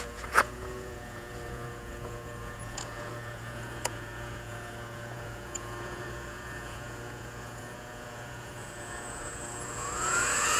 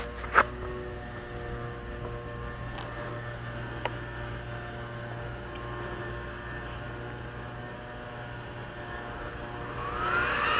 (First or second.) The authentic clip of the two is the second